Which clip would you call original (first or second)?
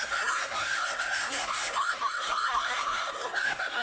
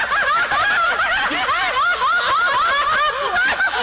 second